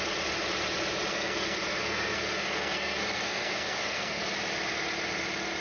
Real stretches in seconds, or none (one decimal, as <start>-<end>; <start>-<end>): 0.0-1.1; 4.2-5.6